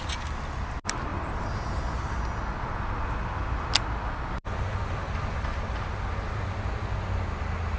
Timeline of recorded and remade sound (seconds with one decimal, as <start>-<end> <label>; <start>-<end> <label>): 0.0-1.1 recorded; 1.1-2.2 remade; 2.2-7.8 recorded